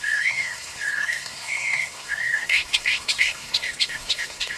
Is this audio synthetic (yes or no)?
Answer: yes